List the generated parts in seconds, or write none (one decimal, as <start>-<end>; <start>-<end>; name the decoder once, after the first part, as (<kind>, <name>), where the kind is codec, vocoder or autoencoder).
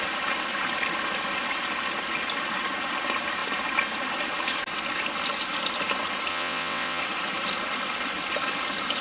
6.3-7.0 (vocoder, WaveNeXt)